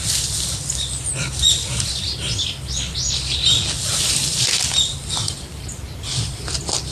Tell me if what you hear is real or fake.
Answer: real